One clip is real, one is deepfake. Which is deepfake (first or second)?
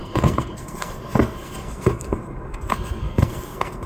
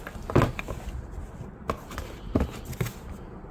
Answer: first